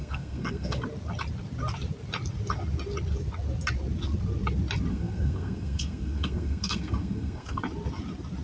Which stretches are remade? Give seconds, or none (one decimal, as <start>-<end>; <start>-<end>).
0.0-0.8; 4.9-7.6

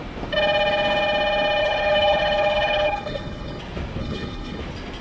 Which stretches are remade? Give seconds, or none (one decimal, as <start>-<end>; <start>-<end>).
1.6-3.6; 4.0-4.6

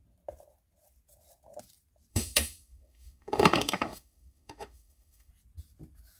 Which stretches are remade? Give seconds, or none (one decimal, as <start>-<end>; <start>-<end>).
2.1-5.3

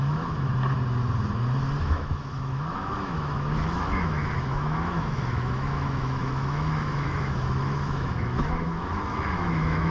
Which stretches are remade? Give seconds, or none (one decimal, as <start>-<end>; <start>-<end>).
0.0-0.5; 1.8-9.9

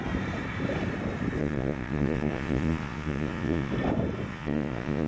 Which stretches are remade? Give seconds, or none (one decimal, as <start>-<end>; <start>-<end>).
1.4-3.7; 4.3-5.1

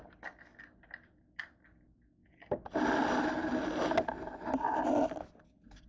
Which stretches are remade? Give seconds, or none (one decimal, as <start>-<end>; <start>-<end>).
none

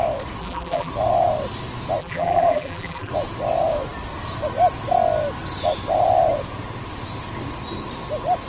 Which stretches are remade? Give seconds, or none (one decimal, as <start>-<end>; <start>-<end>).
0.4-0.9; 2.0-3.1